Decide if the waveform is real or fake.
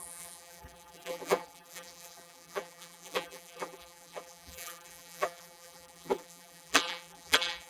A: fake